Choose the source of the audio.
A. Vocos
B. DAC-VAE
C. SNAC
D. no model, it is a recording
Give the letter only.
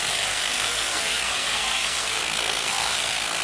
C